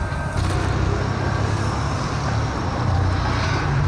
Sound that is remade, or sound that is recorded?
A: recorded